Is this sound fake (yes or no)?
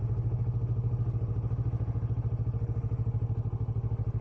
no